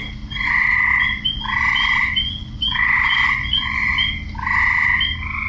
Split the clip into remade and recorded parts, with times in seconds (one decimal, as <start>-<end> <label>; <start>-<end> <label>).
0.0-0.9 recorded; 0.9-3.9 remade; 3.9-5.5 recorded